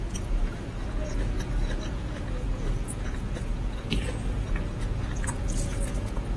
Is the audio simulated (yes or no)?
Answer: yes